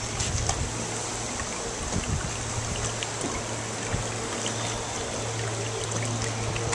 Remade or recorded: recorded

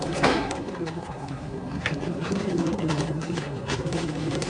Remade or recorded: remade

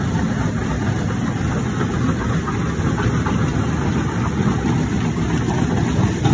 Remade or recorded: recorded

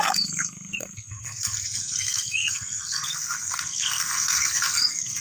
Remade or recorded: remade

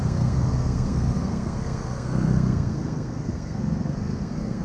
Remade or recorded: remade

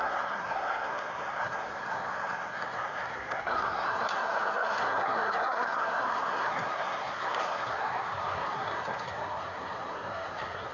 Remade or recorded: remade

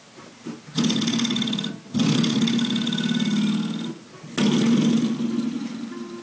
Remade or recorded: recorded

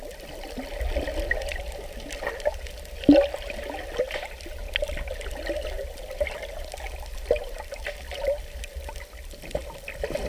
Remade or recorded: recorded